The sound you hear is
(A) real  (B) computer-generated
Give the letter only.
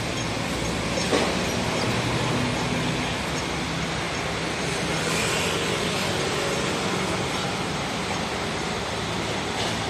A